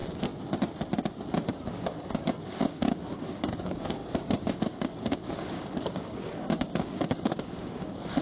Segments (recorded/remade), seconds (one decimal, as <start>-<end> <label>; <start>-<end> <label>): 0.0-1.3 recorded; 1.3-8.2 remade